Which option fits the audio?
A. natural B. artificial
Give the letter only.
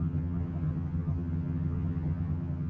B